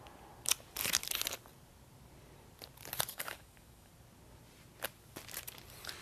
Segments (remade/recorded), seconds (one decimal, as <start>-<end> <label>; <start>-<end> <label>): 0.0-3.1 recorded; 3.1-3.9 remade; 3.9-6.0 recorded